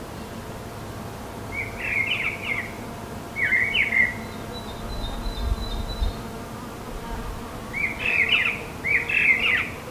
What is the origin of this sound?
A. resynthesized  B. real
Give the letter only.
B